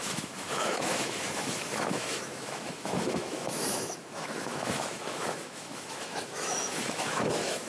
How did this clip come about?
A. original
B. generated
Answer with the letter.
B